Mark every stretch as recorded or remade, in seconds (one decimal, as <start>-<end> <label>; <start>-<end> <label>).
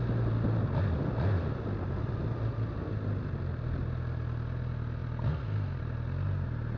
0.0-6.8 recorded